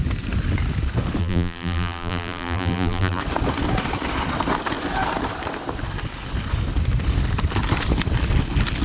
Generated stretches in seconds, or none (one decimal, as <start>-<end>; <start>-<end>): 1.2-3.2